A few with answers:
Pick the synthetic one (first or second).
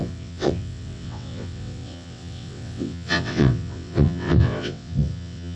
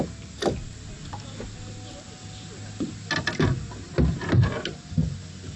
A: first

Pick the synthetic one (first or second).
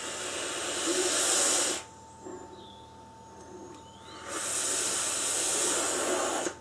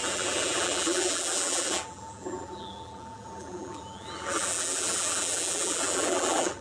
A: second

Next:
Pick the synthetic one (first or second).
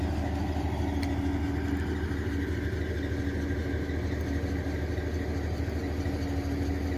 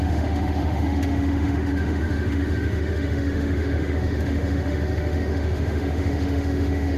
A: second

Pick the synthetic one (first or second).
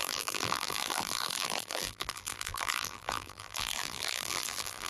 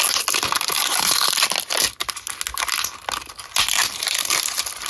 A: first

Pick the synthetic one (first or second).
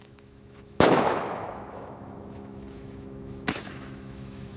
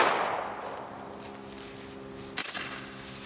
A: first